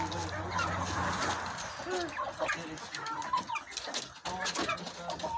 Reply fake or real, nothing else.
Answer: real